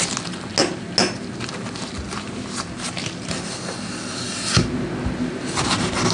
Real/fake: real